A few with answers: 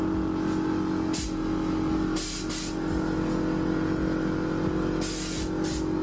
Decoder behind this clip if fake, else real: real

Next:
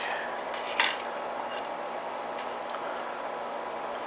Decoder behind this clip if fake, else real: fake, vocoder, BigVGAN v2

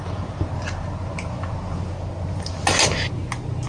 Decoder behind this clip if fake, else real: real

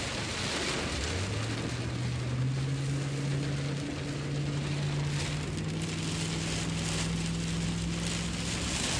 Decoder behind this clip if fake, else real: real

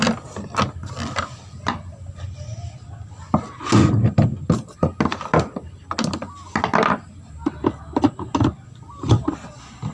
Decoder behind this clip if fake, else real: real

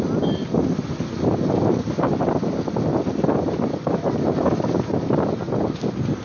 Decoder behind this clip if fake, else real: real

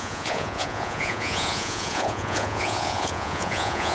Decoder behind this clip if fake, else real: fake, vocoder, Vocos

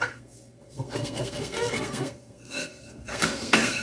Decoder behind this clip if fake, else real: fake, codec, SNAC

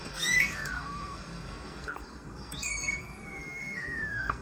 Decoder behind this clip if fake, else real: fake, codec, SNAC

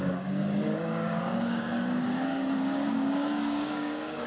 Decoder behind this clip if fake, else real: fake, codec, DAC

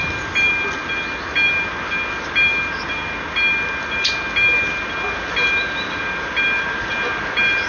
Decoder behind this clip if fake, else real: real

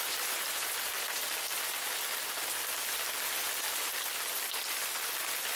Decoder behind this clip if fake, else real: real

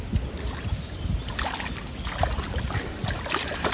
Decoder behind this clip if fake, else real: real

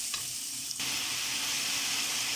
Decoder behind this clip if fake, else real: real